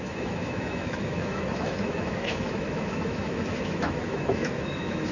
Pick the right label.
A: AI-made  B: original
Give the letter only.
A